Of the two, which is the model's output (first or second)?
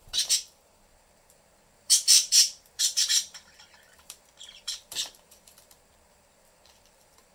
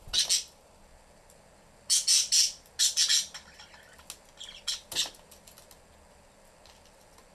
first